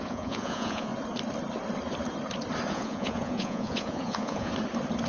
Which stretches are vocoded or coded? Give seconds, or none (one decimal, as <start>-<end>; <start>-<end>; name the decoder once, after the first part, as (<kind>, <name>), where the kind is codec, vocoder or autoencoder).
0.0-0.9 (vocoder, Vocos); 2.7-4.5